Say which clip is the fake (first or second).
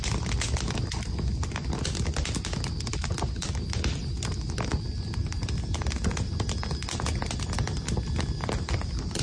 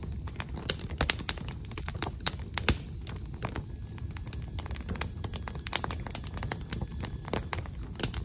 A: second